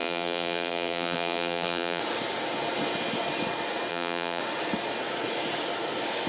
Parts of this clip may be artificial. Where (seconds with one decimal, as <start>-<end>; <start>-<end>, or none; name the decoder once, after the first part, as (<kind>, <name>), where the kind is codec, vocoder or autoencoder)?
0.0-2.0 (vocoder, BigVGAN v2); 3.9-4.4